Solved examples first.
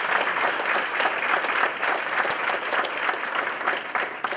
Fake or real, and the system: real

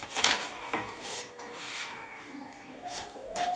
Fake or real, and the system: fake, codec, DAC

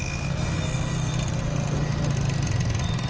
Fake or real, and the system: real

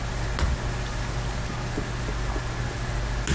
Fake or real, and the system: real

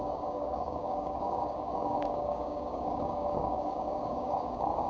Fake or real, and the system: fake, codec, DAC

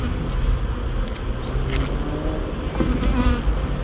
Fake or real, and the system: real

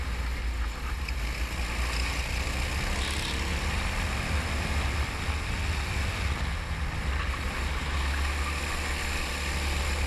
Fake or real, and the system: real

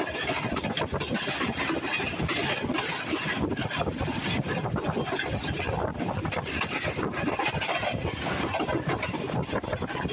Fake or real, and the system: real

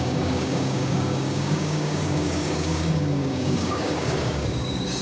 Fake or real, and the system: fake, codec, DAC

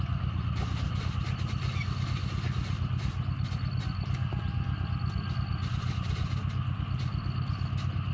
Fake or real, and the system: real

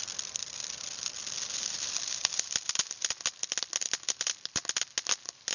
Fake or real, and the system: real